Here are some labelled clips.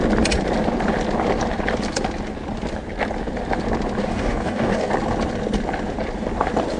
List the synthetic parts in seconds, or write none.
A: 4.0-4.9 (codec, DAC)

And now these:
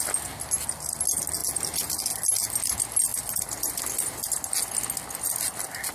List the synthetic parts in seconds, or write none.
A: none

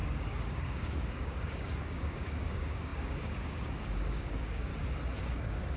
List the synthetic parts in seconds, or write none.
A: 0.0-4.7 (codec, DAC); 5.3-5.8

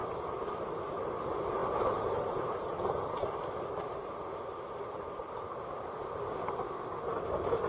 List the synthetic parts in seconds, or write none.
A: none

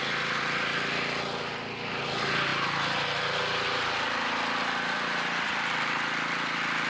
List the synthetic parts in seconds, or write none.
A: none

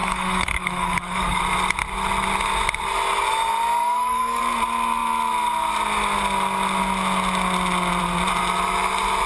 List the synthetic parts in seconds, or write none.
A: 0.0-1.4 (codec, DAC); 3.8-4.4

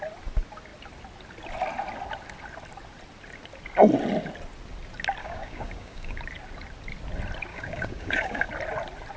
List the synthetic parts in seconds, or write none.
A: 5.2-6.2 (codec, DAC); 7.5-8.5

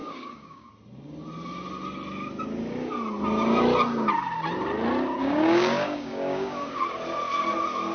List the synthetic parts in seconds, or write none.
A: 0.0-0.7 (codec, DAC); 5.2-6.8